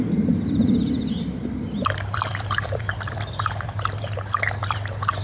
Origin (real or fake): fake